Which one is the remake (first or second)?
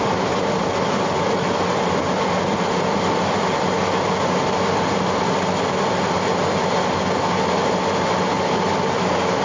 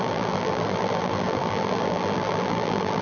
second